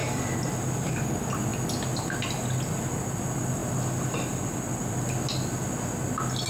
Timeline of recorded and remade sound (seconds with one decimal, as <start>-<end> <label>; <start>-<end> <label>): 0.0-6.5 recorded